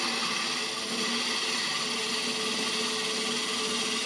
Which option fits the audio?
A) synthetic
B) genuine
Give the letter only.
B